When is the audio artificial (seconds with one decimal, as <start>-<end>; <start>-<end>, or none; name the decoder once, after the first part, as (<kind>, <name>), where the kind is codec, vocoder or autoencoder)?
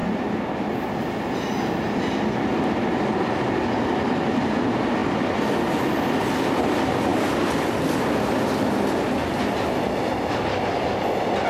none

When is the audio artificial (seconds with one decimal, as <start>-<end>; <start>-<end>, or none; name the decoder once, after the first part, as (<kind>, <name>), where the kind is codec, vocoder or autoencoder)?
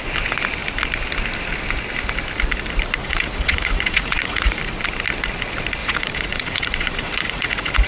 3.0-4.6 (vocoder, Vocos); 5.8-7.9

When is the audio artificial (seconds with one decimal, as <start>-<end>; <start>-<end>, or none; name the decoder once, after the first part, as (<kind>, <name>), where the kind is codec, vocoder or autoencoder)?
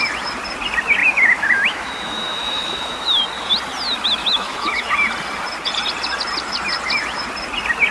1.0-3.2 (autoencoder, DAC-VAE); 4.2-4.9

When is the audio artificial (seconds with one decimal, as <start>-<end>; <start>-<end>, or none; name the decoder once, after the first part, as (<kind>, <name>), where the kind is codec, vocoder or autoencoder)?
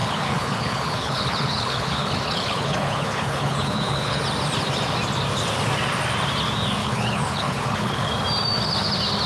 0.0-4.2 (codec, HILCodec); 6.8-8.1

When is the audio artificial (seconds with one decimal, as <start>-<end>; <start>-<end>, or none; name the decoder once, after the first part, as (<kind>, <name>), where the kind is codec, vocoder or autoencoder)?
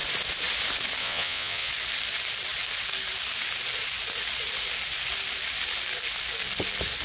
1.0-1.7 (vocoder, Vocos)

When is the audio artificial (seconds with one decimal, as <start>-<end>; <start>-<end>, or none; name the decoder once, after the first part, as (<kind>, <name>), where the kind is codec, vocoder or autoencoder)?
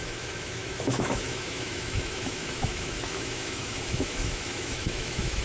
0.0-5.4 (autoencoder, DAC-VAE)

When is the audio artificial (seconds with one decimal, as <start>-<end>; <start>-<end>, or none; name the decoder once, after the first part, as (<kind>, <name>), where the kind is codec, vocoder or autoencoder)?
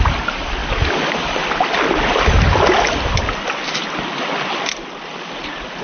none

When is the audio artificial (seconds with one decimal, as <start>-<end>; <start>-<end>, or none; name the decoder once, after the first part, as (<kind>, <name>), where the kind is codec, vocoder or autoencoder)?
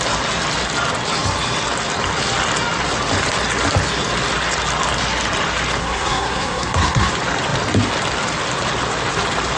5.8-7.1 (codec, SNAC)